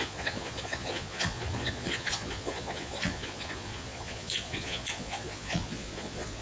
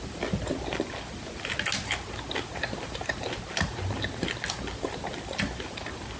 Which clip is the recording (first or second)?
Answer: second